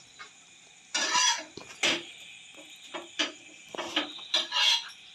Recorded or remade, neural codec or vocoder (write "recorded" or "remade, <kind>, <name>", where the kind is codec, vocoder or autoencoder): recorded